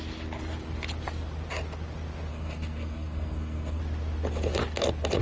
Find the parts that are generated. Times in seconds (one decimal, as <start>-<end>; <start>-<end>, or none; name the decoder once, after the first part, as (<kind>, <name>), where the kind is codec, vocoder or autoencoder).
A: 2.3-3.8 (codec, SNAC)